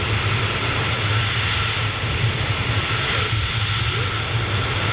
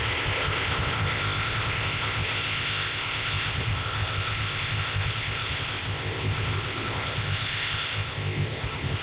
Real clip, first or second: first